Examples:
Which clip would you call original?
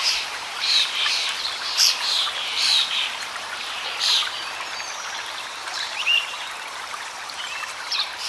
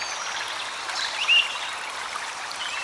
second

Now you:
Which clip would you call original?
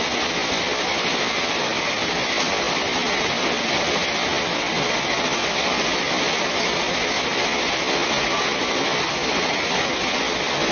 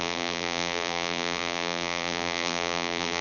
first